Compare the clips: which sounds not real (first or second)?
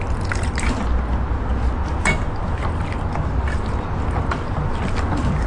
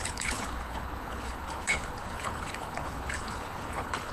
second